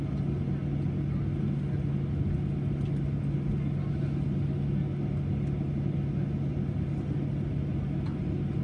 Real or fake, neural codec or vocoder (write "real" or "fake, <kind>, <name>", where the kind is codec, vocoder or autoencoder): real